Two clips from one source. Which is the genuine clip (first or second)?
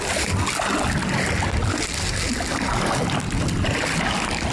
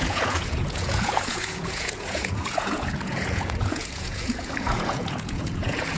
first